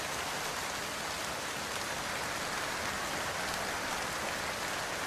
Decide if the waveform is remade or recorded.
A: recorded